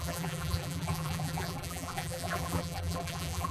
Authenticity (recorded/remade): remade